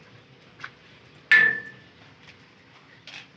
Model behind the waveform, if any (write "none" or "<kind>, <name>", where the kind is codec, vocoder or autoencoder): none